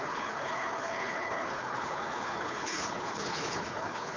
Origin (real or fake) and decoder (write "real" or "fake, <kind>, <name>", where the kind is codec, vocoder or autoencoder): fake, codec, HILCodec